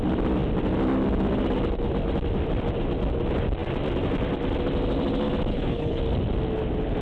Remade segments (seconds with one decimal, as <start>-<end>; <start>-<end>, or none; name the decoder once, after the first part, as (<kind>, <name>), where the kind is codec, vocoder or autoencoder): 5.5-6.0 (codec, HILCodec)